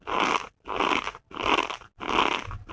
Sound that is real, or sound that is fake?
real